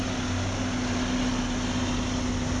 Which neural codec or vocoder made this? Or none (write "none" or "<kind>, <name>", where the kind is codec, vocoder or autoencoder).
none